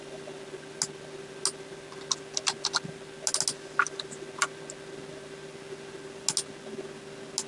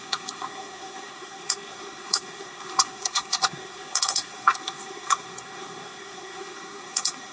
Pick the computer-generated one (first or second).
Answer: second